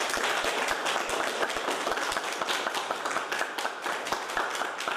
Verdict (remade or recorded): recorded